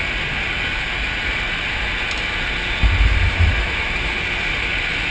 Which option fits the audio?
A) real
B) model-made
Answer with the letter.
A